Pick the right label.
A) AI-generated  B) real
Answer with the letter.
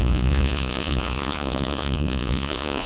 A